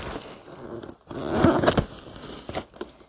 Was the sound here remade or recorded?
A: recorded